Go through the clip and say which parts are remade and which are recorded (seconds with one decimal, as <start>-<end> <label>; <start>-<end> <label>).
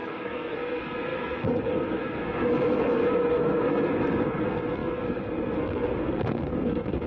0.0-7.1 remade